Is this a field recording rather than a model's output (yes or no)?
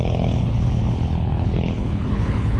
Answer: no